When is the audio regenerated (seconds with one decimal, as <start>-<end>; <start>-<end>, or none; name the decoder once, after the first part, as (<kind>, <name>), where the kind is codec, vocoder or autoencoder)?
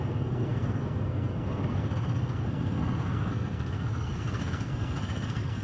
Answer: 0.0-5.6 (codec, SNAC)